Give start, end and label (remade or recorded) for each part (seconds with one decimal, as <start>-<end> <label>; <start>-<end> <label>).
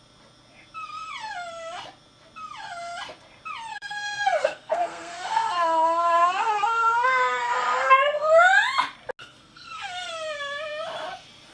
0.0-3.7 recorded; 3.7-7.9 remade; 7.9-9.2 recorded; 9.2-10.1 remade; 10.1-11.5 recorded